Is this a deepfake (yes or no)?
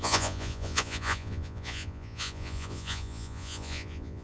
yes